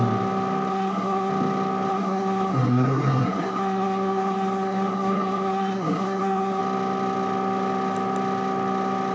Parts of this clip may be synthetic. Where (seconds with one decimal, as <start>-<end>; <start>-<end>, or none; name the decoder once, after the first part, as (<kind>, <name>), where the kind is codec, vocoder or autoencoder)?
0.7-1.3 (codec, SNAC); 1.9-6.6